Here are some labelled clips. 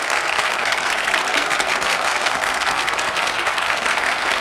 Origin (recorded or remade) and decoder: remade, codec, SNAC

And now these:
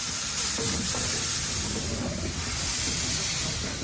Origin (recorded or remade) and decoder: recorded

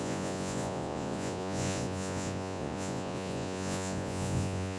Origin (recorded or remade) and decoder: remade, vocoder, Vocos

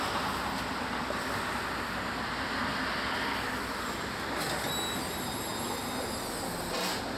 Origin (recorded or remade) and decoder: recorded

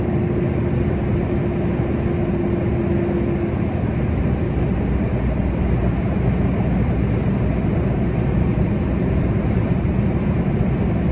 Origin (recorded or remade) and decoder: recorded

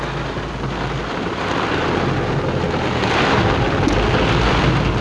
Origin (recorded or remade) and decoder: recorded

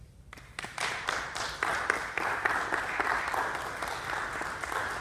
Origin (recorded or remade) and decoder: recorded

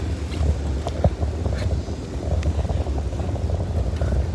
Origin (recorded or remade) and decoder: recorded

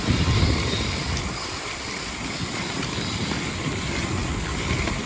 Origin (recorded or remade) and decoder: recorded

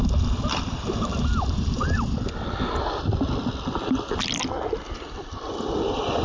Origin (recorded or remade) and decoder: recorded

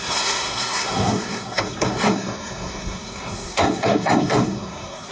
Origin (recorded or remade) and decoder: remade, codec, SNAC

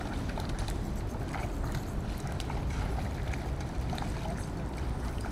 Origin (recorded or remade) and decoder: remade, vocoder, BigVGAN v2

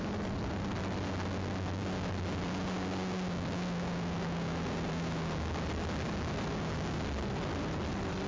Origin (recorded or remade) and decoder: recorded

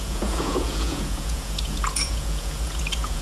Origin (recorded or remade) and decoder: remade, vocoder, Vocos